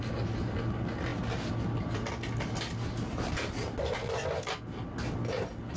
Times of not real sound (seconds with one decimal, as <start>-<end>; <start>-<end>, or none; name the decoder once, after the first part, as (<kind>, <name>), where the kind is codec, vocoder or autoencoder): none